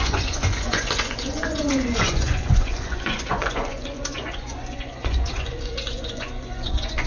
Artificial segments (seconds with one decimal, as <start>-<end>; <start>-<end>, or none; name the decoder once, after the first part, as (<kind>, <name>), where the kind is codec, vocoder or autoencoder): 0.0-7.1 (vocoder, Vocos)